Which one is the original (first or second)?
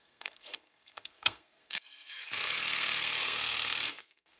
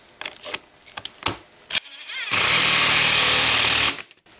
second